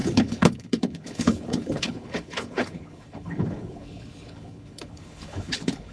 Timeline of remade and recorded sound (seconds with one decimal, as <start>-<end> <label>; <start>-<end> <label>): 0.0-5.9 remade